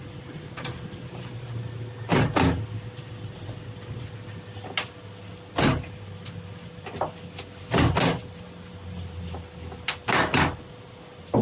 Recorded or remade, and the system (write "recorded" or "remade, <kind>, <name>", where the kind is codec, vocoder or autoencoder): recorded